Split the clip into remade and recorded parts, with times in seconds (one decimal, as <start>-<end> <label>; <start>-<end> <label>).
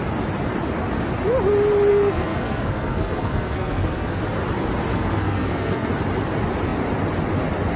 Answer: 0.0-1.9 recorded; 1.9-4.2 remade; 4.2-4.9 recorded; 4.9-5.9 remade; 5.9-7.8 recorded